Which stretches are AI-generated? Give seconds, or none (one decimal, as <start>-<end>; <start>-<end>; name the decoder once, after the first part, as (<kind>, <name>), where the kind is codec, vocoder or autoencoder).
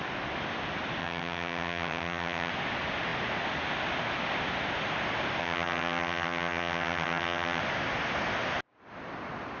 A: 1.0-2.5 (vocoder, HiFi-GAN); 5.4-7.6